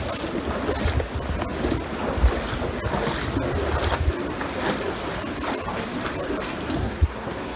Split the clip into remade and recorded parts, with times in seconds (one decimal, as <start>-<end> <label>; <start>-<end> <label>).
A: 0.0-6.8 recorded; 6.8-7.6 remade